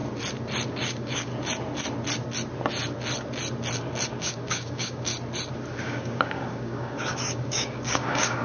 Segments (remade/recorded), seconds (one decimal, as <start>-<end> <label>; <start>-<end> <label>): 0.0-0.7 recorded; 0.7-1.3 remade; 1.3-4.2 recorded; 4.2-5.1 remade; 5.1-5.8 recorded; 5.8-8.4 remade

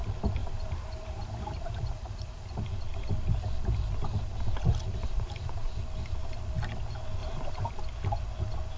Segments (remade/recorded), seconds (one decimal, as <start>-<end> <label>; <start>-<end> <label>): 0.0-0.4 recorded; 0.4-2.4 remade; 2.4-5.0 recorded; 5.0-5.7 remade; 5.7-7.2 recorded; 7.2-7.7 remade; 7.7-8.8 recorded

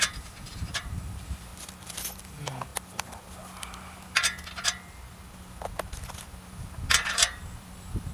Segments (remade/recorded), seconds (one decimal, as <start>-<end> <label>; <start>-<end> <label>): 0.0-1.5 remade; 1.5-2.2 recorded; 2.2-2.7 remade; 2.7-7.1 recorded; 7.1-8.1 remade

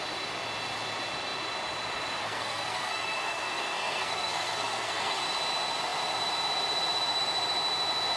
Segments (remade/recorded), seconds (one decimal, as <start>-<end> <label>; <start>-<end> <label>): 0.0-2.2 recorded; 2.2-5.2 remade; 5.2-8.2 recorded

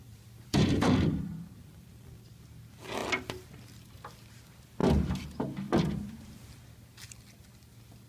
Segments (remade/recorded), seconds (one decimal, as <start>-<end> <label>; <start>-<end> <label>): 0.0-2.1 remade; 2.1-8.1 recorded

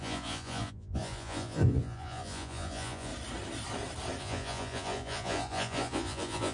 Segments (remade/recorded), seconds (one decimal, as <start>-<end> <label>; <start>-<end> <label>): 0.0-3.1 remade; 3.1-4.2 recorded; 4.2-6.5 remade